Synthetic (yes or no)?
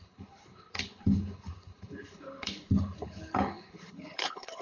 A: yes